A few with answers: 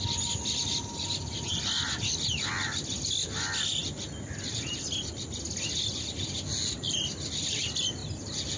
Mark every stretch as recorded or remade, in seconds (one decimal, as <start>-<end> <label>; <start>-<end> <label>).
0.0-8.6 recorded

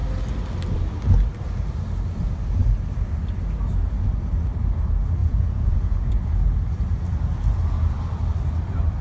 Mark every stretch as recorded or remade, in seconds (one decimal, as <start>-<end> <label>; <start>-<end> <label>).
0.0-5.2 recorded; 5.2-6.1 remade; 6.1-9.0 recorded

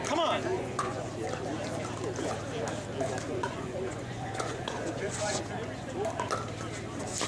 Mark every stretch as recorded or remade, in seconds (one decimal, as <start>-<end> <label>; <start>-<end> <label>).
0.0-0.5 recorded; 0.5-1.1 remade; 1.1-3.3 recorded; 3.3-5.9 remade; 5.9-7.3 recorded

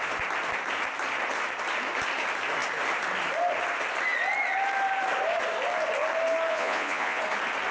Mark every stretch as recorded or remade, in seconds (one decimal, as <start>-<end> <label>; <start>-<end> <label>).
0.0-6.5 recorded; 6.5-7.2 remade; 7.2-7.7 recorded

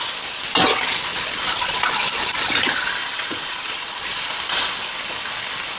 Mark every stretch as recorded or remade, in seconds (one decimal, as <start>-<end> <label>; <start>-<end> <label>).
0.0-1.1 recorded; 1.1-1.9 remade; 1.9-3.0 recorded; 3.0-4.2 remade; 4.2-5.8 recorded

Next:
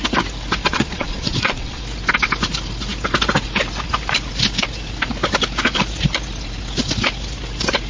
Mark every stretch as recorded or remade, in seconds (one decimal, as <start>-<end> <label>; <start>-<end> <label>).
0.0-0.6 recorded; 0.6-1.8 remade; 1.8-7.9 recorded